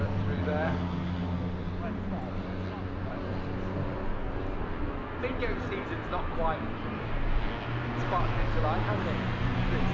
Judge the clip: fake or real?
real